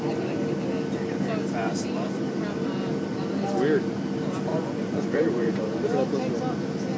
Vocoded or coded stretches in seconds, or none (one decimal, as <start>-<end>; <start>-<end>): 4.5-5.6